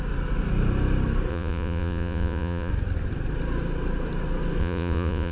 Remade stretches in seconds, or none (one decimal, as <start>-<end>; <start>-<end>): 1.3-2.7; 4.6-5.3